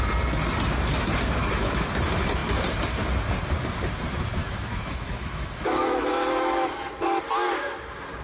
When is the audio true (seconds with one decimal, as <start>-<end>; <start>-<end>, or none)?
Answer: 0.0-1.4; 1.9-4.4; 7.2-8.2

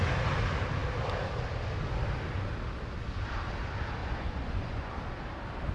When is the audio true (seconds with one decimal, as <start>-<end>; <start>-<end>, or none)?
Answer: 0.0-4.0; 4.9-5.7

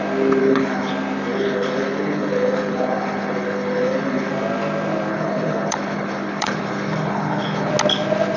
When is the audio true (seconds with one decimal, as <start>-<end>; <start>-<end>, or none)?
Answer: 0.0-0.4; 0.9-1.3; 4.3-5.1; 7.7-8.4

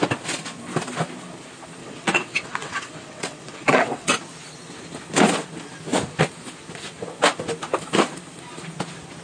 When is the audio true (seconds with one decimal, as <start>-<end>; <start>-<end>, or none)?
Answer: 0.0-1.8; 4.1-9.2

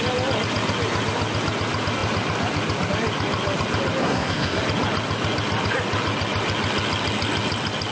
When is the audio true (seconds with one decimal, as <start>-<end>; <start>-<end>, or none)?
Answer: 0.0-4.0; 4.6-7.9